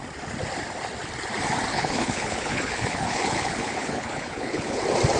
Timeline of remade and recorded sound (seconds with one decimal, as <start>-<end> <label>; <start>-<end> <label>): 0.0-1.7 recorded; 1.7-4.8 remade; 4.8-5.2 recorded